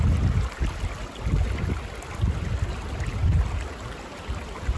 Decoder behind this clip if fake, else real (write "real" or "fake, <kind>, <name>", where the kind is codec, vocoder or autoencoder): real